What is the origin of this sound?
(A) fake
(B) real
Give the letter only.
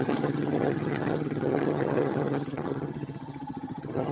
A